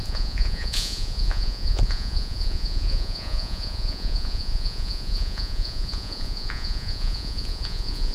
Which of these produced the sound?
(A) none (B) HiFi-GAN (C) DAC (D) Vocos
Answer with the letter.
D